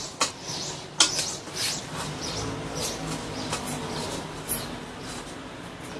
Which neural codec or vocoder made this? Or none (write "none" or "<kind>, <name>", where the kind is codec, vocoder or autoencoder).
none